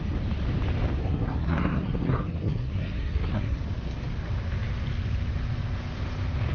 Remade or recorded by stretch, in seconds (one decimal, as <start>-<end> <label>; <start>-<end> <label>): 0.0-1.0 recorded; 1.0-3.6 remade; 3.6-6.5 recorded